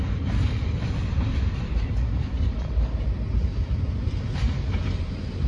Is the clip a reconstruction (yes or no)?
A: yes